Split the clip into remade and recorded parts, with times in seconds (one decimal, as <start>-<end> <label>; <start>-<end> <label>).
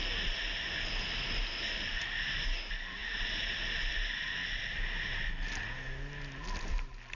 0.0-7.1 recorded